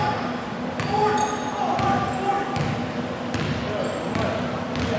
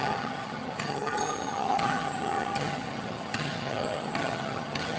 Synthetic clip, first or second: second